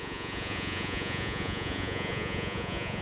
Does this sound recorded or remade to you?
remade